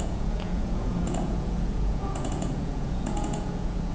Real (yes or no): no